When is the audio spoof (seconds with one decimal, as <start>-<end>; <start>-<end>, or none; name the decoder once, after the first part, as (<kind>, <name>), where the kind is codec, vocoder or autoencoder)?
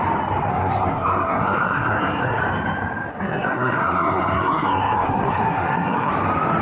0.5-2.4 (codec, SNAC); 3.1-6.1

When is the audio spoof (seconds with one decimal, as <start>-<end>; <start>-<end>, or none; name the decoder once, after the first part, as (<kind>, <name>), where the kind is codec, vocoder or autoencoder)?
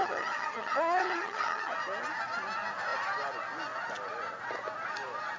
0.0-1.7 (vocoder, HiFi-GAN)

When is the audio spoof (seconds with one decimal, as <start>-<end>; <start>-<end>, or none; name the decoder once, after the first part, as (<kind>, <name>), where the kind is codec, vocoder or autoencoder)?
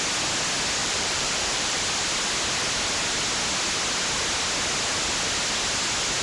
0.8-1.8 (vocoder, BigVGAN v2)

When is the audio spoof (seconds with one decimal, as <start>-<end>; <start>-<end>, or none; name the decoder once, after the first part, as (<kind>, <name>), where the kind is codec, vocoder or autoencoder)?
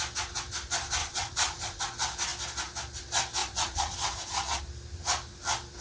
1.0-1.8 (vocoder, Vocos); 3.4-4.6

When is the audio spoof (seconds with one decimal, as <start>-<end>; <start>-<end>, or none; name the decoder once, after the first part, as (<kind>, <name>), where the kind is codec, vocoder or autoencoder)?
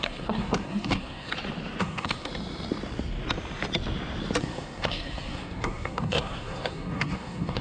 0.0-1.3 (codec, SNAC); 1.8-2.3; 4.4-7.6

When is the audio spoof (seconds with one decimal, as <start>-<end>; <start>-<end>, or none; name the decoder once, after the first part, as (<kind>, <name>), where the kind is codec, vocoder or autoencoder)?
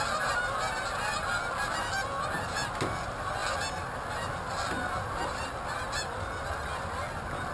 none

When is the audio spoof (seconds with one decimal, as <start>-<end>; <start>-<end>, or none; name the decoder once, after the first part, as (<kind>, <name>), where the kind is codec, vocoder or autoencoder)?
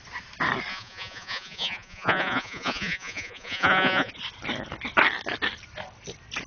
0.7-4.1 (vocoder, Vocos)